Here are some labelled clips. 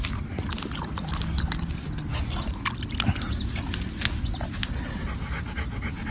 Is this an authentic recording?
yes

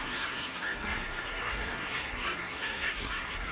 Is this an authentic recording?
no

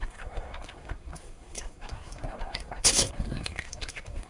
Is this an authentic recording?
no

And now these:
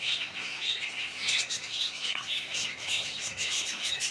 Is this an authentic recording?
no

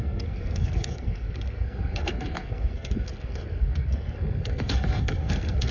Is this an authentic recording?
no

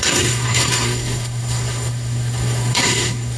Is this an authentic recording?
no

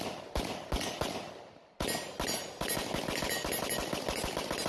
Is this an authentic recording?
yes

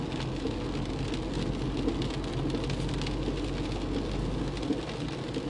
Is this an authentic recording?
yes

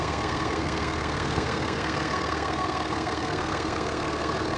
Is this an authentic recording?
no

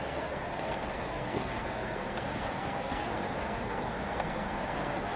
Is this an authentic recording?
no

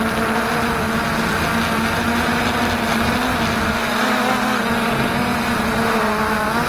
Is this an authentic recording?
yes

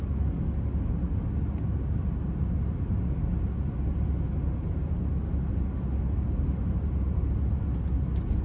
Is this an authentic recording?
yes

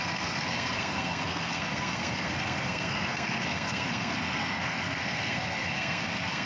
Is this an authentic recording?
no